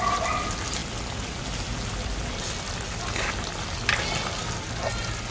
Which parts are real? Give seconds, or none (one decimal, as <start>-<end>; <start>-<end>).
0.0-5.3